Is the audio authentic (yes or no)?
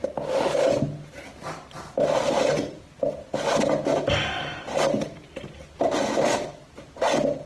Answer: yes